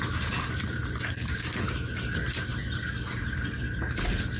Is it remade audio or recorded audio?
recorded